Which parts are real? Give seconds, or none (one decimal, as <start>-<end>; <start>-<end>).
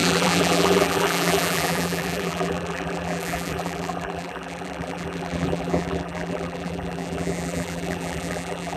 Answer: none